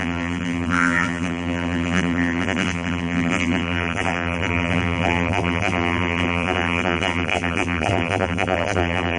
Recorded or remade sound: remade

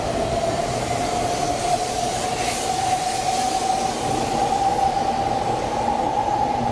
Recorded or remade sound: recorded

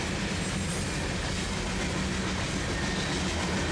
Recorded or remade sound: recorded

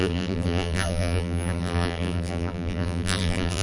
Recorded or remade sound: remade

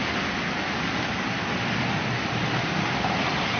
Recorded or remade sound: recorded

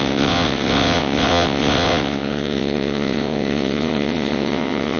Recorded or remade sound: remade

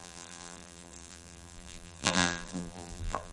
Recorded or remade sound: remade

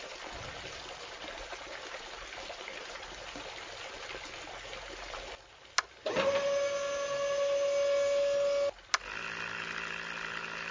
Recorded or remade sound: recorded